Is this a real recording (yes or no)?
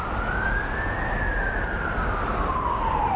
yes